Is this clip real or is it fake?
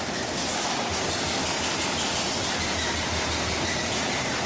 real